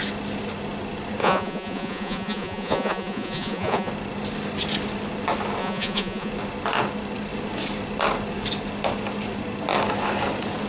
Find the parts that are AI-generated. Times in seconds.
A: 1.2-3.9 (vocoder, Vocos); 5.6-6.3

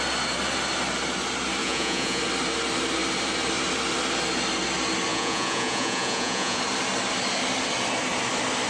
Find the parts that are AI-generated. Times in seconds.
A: 1.6-2.2 (vocoder, Vocos); 5.1-6.6

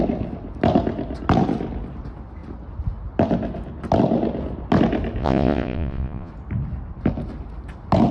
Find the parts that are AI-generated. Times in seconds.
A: 5.2-6.3 (vocoder, Vocos)

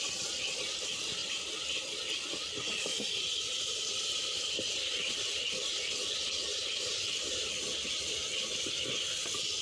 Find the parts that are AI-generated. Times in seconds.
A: 1.2-2.0 (vocoder, BigVGAN v2); 2.9-7.5

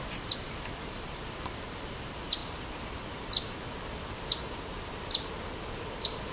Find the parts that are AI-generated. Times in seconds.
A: none

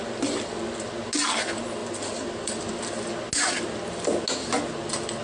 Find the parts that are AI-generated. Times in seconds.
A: 1.8-2.7 (vocoder, BigVGAN v2)

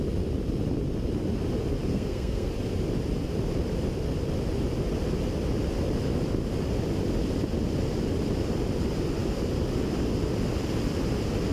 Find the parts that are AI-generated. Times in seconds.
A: 1.9-2.5 (codec, SNAC)

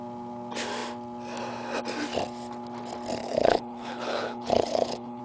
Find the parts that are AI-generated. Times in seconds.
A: 3.2-5.2 (codec, HILCodec)